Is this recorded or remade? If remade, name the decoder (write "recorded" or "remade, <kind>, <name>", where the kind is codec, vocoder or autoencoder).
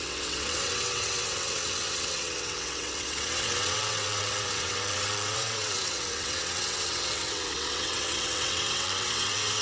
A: remade, vocoder, WaveNeXt